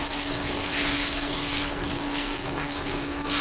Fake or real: fake